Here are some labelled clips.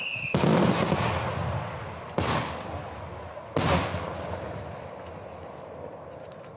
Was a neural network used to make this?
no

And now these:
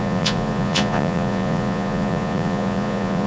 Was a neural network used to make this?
yes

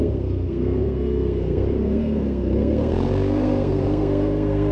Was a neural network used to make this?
yes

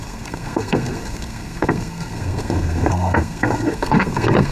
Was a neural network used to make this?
yes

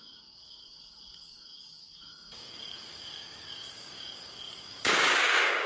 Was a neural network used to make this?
yes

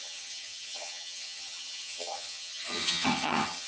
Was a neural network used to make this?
yes